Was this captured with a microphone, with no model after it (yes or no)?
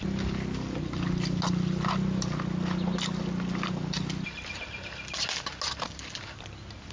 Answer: yes